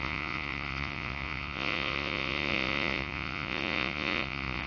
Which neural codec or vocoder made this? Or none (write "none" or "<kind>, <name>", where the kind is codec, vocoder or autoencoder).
vocoder, Vocos